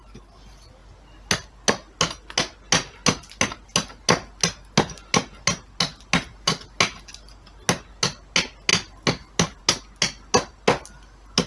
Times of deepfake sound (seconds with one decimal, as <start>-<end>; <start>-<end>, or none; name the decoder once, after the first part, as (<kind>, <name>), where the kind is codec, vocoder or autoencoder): none